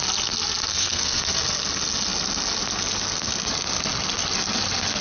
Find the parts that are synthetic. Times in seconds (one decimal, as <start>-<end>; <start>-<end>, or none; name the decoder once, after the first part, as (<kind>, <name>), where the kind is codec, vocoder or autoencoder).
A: 0.7-1.2 (codec, SNAC)